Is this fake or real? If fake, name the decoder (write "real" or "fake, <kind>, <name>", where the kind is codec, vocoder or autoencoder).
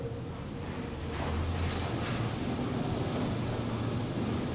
real